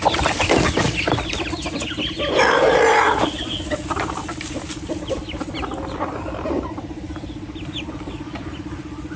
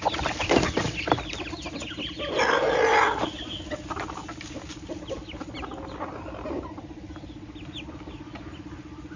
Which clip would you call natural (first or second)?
second